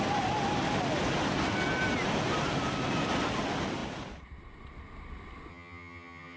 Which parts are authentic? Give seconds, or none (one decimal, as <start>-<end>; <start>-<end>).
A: 0.0-5.5